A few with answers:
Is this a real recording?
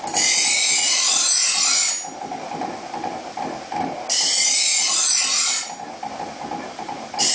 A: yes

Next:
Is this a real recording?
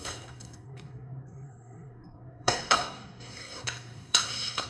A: no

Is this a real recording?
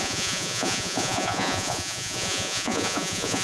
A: no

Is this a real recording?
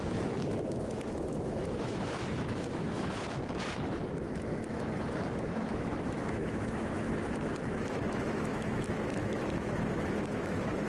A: no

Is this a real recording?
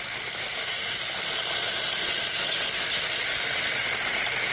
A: yes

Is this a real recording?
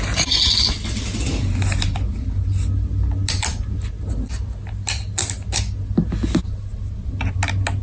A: yes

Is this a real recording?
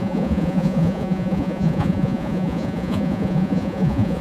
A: no